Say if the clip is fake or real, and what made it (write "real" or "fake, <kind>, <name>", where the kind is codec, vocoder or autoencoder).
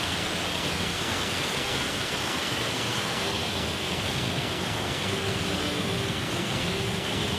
fake, codec, SNAC